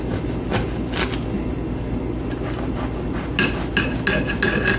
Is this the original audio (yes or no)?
yes